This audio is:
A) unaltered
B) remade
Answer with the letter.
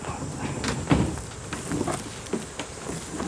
A